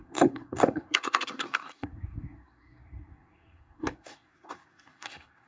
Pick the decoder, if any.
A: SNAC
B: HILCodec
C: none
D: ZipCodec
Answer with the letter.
A